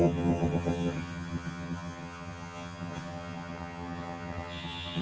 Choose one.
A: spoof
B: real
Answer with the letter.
A